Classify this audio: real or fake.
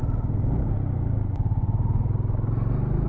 real